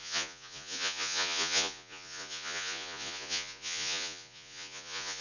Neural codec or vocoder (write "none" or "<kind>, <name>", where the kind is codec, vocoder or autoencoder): vocoder, Vocos